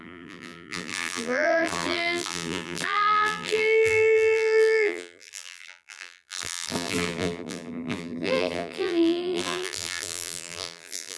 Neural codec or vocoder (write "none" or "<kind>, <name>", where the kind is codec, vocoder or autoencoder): vocoder, BigVGAN v2